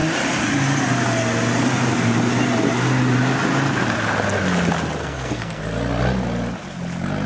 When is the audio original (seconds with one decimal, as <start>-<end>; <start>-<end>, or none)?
0.0-5.0; 5.6-7.3